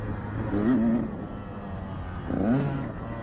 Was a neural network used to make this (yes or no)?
no